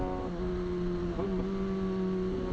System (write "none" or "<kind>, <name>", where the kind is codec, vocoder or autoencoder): none